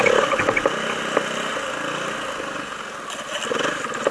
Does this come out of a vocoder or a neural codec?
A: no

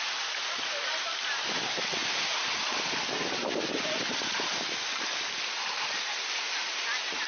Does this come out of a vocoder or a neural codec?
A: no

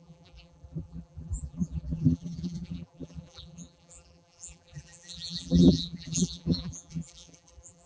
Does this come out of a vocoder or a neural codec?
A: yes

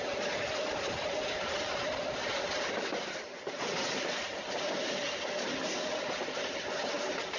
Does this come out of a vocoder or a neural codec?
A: no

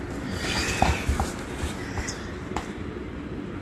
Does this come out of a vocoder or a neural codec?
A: no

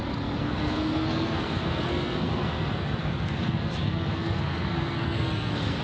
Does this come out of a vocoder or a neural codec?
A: yes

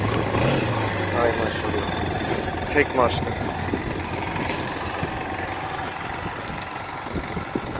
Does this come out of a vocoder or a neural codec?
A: no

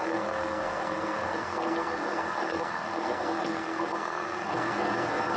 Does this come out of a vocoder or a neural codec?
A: yes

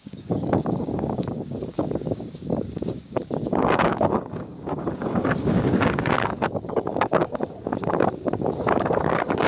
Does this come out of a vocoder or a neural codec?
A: yes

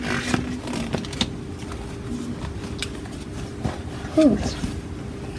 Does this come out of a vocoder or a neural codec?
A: no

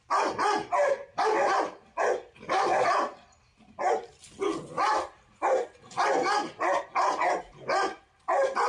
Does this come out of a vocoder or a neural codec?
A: no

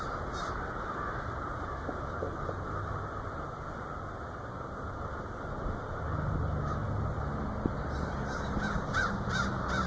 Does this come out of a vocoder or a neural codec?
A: no